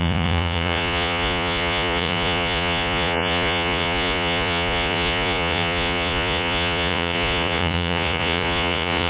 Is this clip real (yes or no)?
no